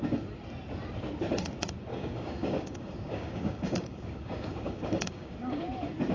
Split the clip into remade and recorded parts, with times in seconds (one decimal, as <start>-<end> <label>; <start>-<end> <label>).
0.0-1.9 recorded; 1.9-5.6 remade; 5.6-6.1 recorded